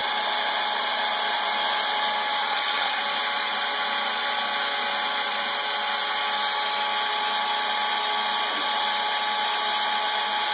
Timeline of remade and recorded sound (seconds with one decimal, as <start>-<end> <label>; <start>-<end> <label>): 0.0-2.4 recorded; 2.4-3.0 remade; 3.0-10.5 recorded